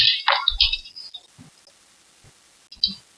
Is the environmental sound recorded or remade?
recorded